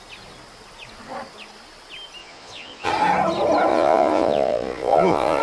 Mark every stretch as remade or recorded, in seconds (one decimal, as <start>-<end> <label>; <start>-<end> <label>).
0.0-2.2 recorded; 2.2-2.9 remade; 2.9-3.7 recorded; 3.7-5.4 remade